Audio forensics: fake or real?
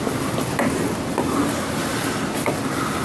real